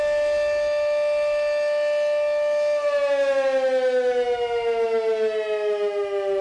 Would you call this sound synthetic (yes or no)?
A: no